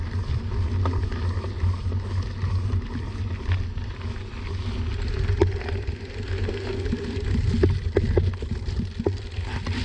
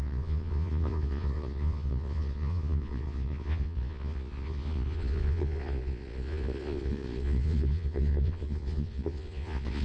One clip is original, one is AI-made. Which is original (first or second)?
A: first